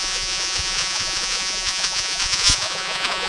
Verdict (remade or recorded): remade